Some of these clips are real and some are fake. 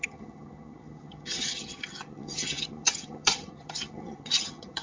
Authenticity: fake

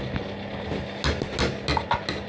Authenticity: real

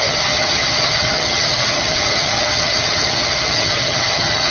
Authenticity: fake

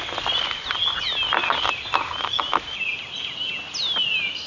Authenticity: real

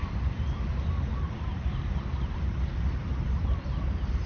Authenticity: real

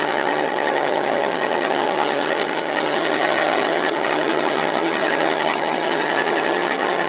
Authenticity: fake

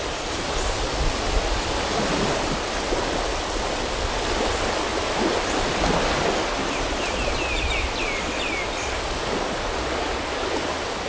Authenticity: real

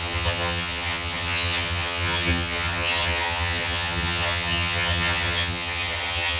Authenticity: fake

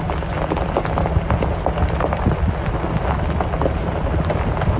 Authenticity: real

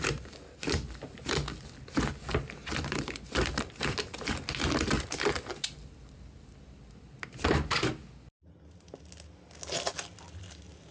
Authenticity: real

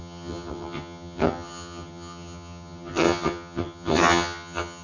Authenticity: fake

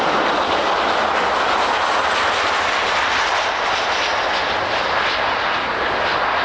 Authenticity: real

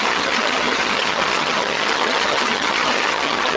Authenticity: fake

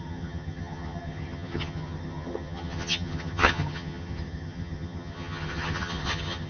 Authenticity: fake